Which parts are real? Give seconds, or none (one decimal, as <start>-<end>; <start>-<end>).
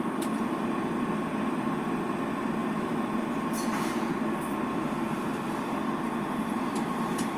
none